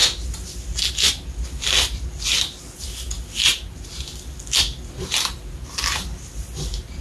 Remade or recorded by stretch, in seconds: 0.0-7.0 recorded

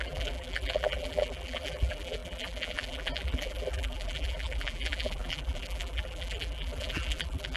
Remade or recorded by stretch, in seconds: 0.0-7.6 remade

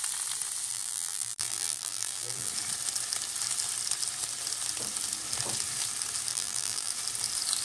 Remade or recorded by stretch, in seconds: 0.0-0.7 recorded; 0.7-2.5 remade; 2.5-6.3 recorded; 6.3-6.9 remade; 6.9-7.6 recorded

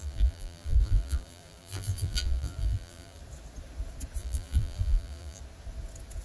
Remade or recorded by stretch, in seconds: 0.0-3.2 remade; 3.2-4.2 recorded; 4.2-5.4 remade; 5.4-6.2 recorded

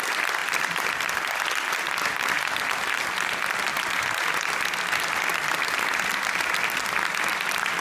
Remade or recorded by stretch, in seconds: 0.0-0.4 recorded; 0.4-1.7 remade; 1.7-5.3 recorded; 5.3-6.1 remade; 6.1-7.8 recorded

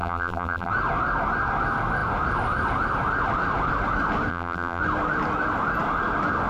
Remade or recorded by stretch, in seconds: 0.0-0.7 remade; 0.7-4.3 recorded; 4.3-4.8 remade; 4.8-6.5 recorded

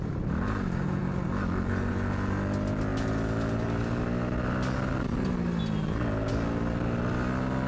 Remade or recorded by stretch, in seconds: 0.0-7.7 recorded

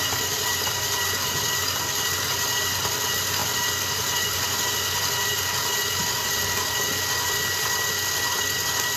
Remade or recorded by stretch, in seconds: 0.0-9.0 recorded